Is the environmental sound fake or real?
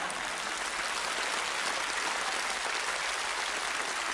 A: real